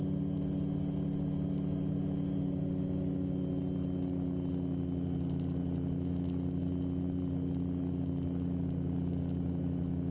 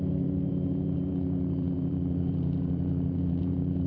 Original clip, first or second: first